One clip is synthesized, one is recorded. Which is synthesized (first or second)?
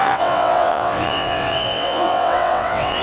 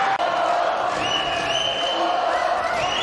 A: first